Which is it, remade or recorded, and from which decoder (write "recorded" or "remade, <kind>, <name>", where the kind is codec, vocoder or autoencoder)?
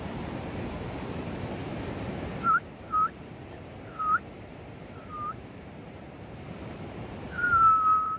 remade, vocoder, BigVGAN v2